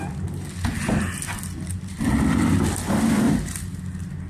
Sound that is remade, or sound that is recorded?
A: recorded